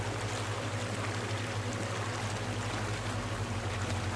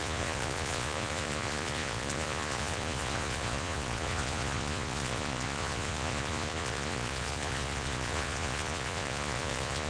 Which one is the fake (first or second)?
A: second